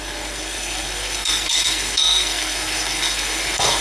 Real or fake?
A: fake